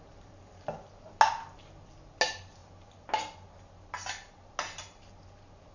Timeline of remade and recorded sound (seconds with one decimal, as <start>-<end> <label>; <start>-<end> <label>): 0.0-5.7 recorded